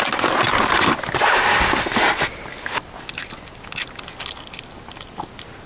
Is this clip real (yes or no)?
yes